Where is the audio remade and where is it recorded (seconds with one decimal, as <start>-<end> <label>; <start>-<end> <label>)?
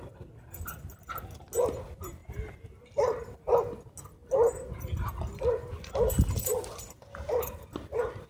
0.0-8.3 recorded